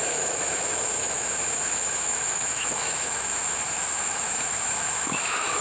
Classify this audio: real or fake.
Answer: fake